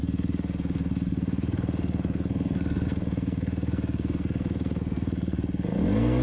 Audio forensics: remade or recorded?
remade